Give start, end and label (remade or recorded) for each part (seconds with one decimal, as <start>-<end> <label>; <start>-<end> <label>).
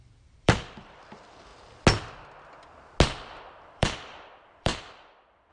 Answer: 0.0-1.5 remade; 1.5-3.4 recorded; 3.4-5.5 remade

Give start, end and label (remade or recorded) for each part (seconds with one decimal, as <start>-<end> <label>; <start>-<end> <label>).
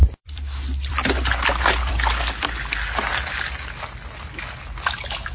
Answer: 0.0-1.1 remade; 1.1-1.8 recorded; 1.8-2.5 remade; 2.5-5.3 recorded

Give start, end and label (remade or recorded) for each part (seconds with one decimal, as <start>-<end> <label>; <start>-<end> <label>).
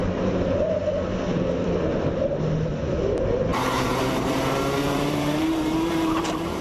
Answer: 0.0-3.5 recorded; 3.5-6.6 remade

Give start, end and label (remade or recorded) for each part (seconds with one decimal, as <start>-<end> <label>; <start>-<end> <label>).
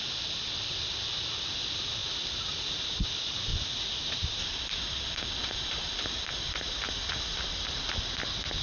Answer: 0.0-2.0 recorded; 2.0-3.1 remade; 3.1-3.5 recorded; 3.5-7.7 remade; 7.7-8.6 recorded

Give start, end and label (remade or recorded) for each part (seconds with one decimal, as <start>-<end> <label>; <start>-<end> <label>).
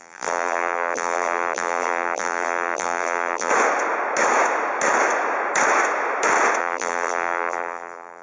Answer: 0.0-3.5 remade; 3.5-6.6 recorded; 6.6-8.2 remade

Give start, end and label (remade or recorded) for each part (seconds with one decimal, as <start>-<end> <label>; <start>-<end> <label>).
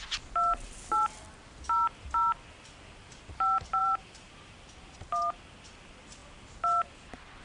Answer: 0.0-3.8 recorded; 3.8-5.4 remade; 5.4-7.4 recorded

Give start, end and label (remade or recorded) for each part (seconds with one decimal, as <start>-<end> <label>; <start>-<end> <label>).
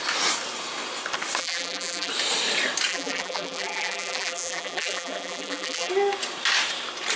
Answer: 0.0-1.4 recorded; 1.4-2.1 remade; 2.1-2.9 recorded; 2.9-5.9 remade; 5.9-7.2 recorded